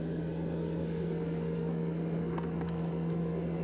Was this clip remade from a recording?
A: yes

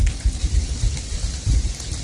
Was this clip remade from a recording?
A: no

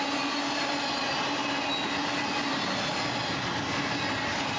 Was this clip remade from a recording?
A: no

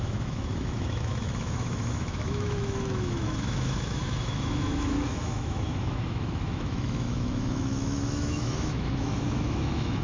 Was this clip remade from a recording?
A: yes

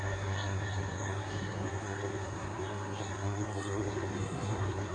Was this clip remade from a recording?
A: yes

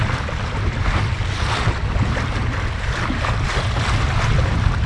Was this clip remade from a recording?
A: no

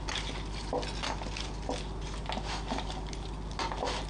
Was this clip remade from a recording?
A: no